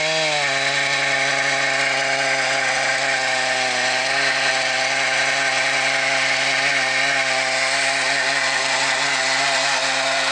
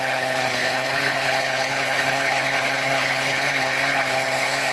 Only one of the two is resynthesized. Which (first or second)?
second